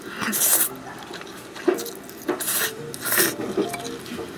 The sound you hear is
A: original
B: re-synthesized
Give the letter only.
A